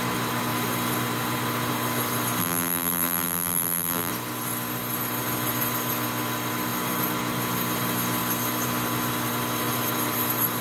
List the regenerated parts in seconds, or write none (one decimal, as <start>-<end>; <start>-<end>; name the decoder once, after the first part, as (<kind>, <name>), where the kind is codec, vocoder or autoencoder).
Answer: 2.4-4.1 (vocoder, BigVGAN v2)